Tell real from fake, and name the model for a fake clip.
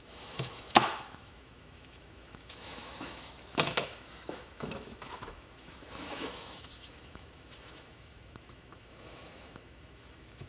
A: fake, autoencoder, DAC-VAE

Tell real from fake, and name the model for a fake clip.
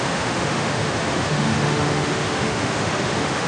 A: fake, autoencoder, DAC-VAE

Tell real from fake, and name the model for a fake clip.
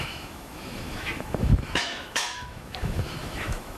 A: fake, autoencoder, DAC-VAE